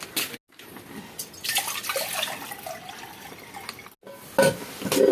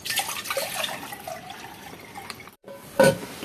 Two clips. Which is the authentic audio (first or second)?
first